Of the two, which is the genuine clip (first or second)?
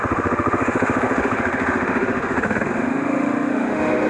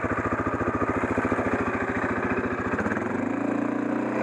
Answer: second